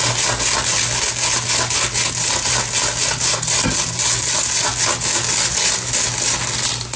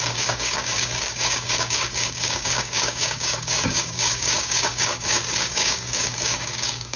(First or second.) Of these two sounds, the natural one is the first